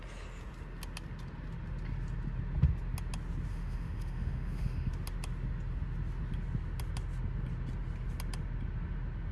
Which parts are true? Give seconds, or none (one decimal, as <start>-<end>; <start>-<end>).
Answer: 0.0-3.5; 4.9-9.3